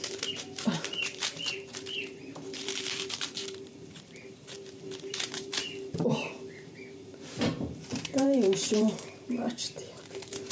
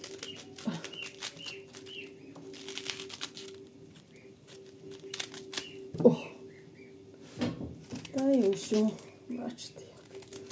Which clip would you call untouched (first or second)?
second